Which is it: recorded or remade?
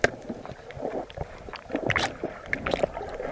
recorded